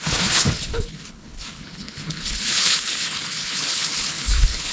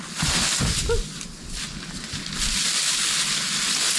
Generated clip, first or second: first